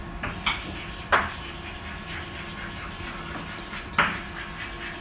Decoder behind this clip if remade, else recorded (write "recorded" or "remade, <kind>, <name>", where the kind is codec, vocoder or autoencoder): recorded